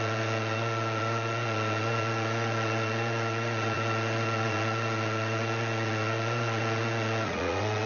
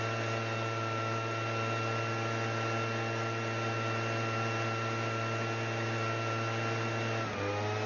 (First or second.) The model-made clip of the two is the first